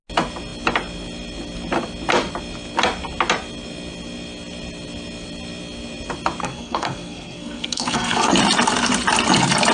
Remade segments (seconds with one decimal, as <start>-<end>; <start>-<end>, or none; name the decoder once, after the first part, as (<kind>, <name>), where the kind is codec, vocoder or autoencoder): 6.4-8.3 (codec, SNAC)